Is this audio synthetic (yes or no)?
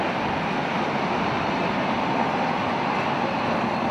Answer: no